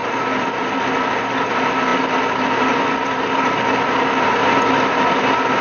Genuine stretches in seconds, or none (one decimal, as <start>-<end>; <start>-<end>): 0.0-5.6